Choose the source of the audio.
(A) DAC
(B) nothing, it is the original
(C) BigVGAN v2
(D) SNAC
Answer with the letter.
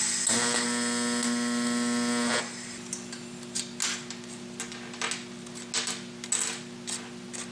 B